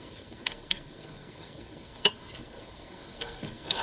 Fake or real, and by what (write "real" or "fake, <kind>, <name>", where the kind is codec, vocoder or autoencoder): fake, codec, SNAC